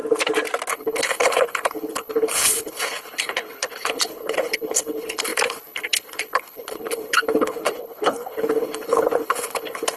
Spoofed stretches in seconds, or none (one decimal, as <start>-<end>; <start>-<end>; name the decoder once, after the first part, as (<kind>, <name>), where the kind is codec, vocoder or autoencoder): 0.7-10.0 (codec, HILCodec)